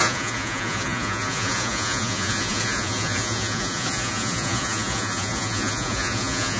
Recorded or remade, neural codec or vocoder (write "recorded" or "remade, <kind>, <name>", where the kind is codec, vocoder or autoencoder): remade, vocoder, Vocos